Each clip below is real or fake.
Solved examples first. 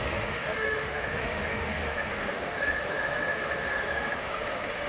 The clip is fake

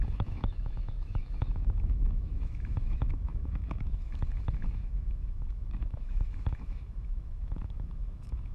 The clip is fake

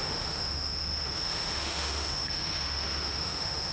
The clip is fake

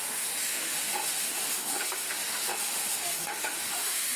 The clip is fake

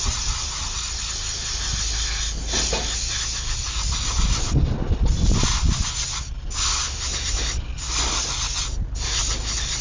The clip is real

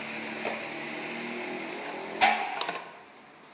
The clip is real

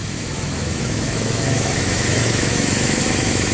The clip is fake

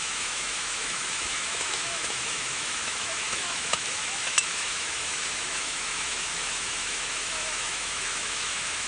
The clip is fake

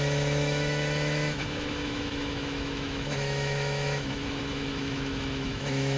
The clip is fake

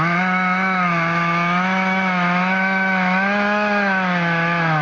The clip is fake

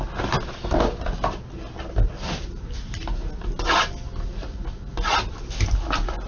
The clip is real